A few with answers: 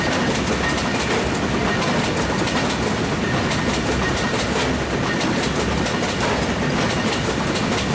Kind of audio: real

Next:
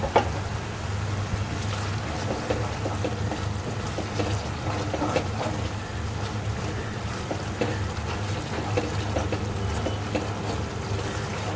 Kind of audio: real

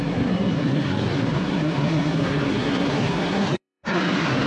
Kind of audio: fake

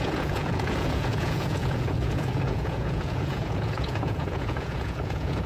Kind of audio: fake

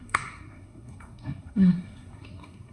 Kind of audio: fake